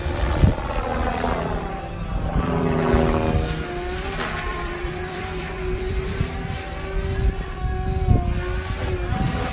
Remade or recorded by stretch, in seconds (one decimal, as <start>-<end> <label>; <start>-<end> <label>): 0.0-2.3 recorded; 2.3-2.9 remade; 2.9-4.5 recorded; 4.5-6.2 remade; 6.2-9.5 recorded